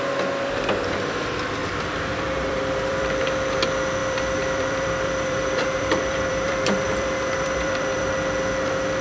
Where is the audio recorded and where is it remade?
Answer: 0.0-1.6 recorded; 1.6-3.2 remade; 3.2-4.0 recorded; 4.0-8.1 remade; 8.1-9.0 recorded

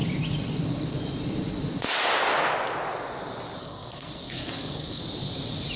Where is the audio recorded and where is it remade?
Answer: 0.0-3.6 recorded; 3.6-5.0 remade; 5.0-5.8 recorded

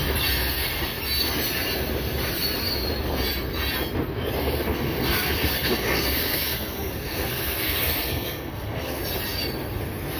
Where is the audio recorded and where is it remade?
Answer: 0.0-4.4 recorded; 4.4-9.0 remade; 9.0-10.2 recorded

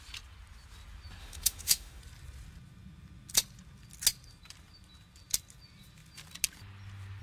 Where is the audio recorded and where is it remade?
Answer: 0.0-1.2 recorded; 1.2-2.0 remade; 2.0-7.2 recorded